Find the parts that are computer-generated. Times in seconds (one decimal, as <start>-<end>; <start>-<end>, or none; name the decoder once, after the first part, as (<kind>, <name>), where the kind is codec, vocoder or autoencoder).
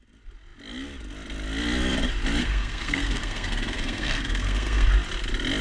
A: 2.4-4.9 (codec, SNAC)